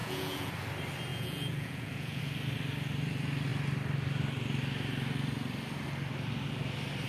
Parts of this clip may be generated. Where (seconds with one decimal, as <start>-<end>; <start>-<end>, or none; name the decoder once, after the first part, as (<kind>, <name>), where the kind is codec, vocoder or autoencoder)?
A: 0.0-0.5 (vocoder, Vocos); 1.1-2.2